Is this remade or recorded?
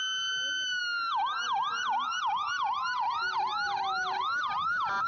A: recorded